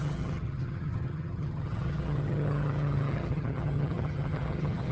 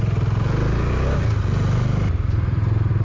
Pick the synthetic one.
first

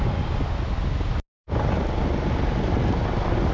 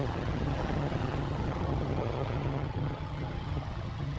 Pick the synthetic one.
second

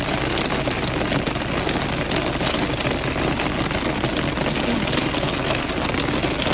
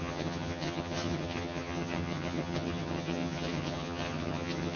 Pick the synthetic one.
second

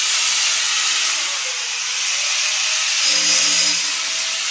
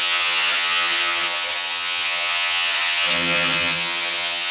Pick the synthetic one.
second